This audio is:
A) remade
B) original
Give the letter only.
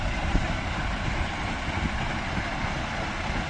B